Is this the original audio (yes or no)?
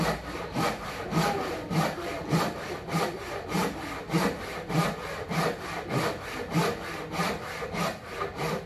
yes